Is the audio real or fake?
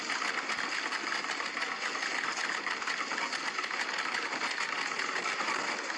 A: real